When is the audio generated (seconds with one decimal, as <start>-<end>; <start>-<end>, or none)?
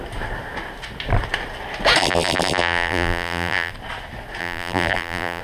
2.0-3.7; 4.4-5.4